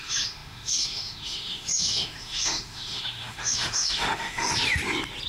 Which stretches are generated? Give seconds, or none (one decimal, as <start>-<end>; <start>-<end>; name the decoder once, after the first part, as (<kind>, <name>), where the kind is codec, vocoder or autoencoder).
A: 0.0-4.5 (autoencoder, DAC-VAE)